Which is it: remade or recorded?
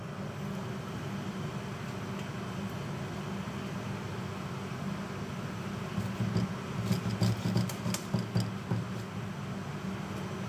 recorded